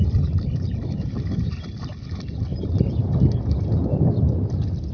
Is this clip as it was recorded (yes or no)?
yes